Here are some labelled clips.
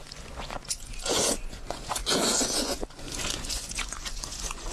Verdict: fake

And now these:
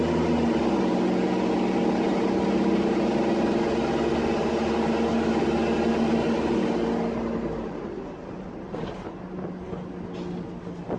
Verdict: real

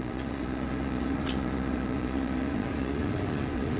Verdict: fake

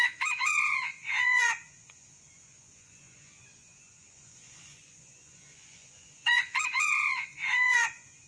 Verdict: fake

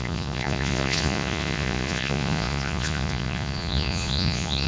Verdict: fake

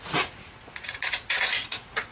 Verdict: fake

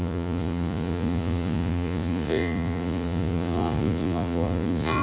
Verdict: fake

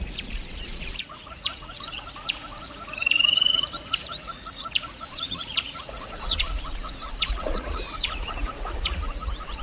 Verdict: fake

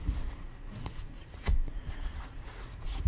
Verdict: fake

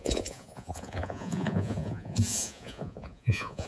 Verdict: fake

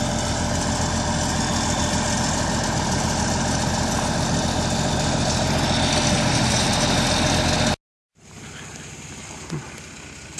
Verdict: real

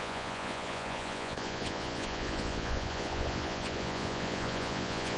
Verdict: fake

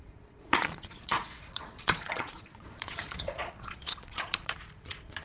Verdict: fake